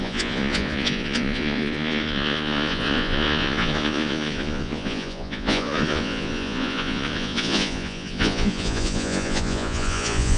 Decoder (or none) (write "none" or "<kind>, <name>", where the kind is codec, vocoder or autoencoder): vocoder, Vocos